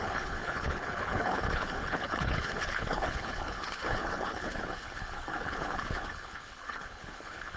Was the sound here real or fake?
fake